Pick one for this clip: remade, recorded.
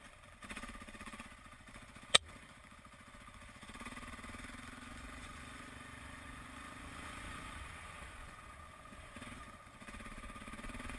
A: remade